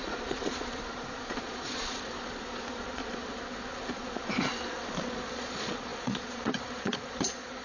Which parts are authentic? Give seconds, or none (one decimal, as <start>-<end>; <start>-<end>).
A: none